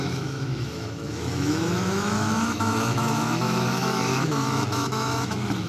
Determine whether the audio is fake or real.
fake